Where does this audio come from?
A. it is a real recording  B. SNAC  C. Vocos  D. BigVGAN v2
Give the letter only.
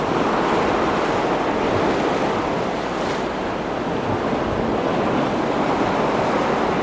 A